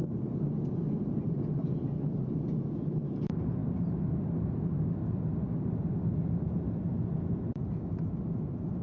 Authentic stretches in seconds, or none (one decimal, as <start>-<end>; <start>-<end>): 0.0-8.8